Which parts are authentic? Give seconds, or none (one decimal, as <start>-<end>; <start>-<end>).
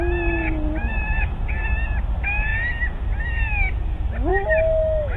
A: 0.0-0.8; 1.3-4.3